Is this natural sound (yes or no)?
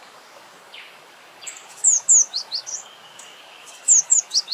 no